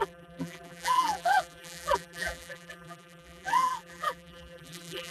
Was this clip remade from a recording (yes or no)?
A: yes